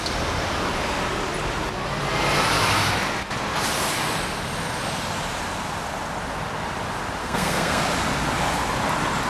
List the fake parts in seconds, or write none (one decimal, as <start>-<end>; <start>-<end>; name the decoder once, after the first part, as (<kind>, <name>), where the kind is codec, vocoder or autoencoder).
7.2-7.8 (codec, SNAC)